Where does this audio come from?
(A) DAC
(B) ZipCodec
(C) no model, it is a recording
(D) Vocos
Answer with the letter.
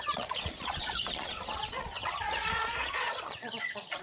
D